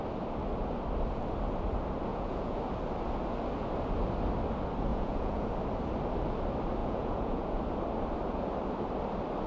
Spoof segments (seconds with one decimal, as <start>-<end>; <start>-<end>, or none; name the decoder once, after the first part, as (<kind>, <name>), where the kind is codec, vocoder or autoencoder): 2.1-2.6 (vocoder, Vocos); 4.9-5.5; 6.8-7.6